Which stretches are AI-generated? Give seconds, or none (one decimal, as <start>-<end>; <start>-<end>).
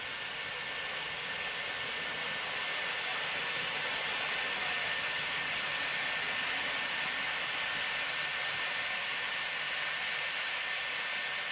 none